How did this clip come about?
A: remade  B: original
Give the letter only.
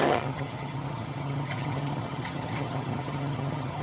A